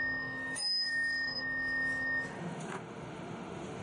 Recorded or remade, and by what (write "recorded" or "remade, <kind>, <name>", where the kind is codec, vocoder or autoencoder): remade, autoencoder, DAC-VAE